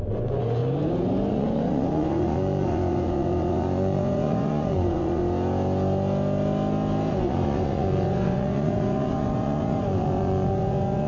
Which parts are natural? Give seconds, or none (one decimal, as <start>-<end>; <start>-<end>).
0.6-1.3; 5.2-7.1